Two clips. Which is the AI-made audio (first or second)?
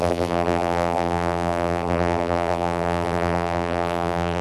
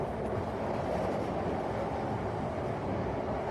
first